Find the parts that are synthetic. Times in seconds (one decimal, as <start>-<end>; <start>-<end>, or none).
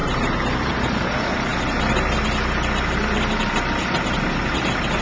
none